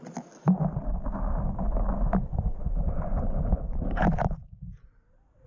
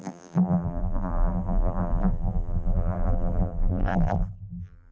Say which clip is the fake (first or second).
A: second